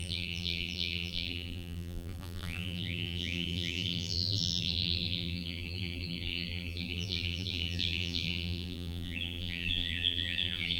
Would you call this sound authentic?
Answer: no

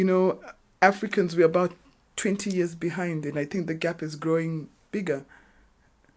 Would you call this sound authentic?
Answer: yes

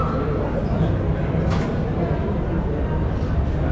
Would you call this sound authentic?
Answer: yes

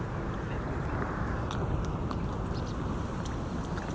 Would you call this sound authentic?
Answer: yes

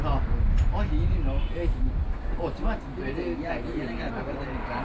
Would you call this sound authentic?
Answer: yes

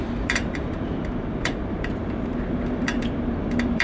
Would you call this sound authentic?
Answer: no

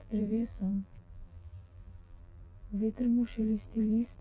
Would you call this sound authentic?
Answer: no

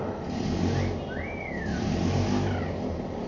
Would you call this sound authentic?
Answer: yes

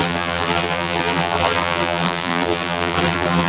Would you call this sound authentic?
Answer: no